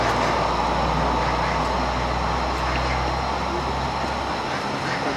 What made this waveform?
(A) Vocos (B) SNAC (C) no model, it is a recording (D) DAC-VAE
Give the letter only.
C